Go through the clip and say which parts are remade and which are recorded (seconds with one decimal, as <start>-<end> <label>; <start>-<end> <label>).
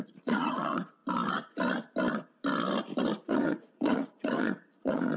0.0-1.0 remade; 1.0-3.3 recorded; 3.3-5.2 remade